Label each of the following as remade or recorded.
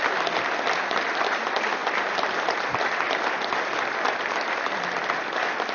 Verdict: recorded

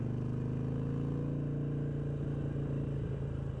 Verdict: recorded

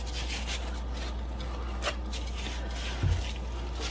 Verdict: recorded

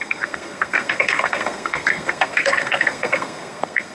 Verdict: remade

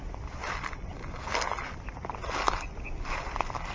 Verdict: recorded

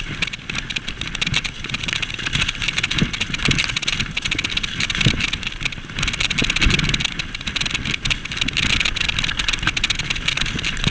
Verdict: recorded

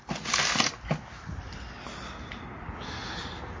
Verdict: recorded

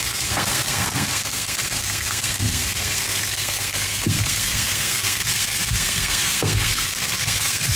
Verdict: remade